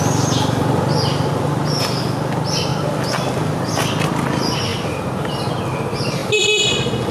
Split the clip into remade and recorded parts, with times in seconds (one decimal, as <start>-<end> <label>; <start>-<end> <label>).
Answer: 0.0-7.1 recorded